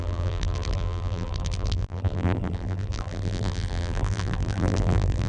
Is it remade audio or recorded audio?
remade